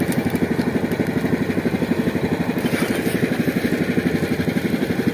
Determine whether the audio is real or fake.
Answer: real